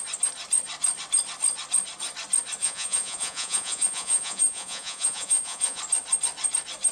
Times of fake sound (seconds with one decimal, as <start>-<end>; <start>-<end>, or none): 2.6-5.8